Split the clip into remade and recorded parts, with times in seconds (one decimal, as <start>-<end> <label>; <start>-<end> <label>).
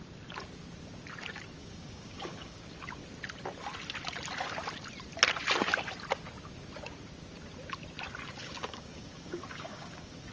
0.0-1.6 recorded; 1.6-2.6 remade; 2.6-8.4 recorded; 8.4-10.3 remade